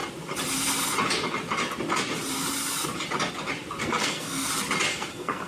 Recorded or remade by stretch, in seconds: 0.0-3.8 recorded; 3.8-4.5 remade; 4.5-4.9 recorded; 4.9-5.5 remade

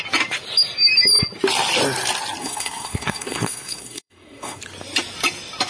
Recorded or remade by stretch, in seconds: 0.0-2.4 recorded; 2.4-4.6 remade; 4.6-5.7 recorded

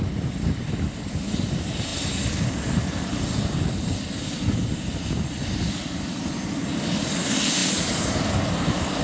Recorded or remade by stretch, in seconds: 0.0-9.0 recorded